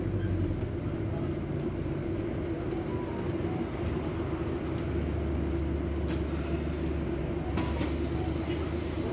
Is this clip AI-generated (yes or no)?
no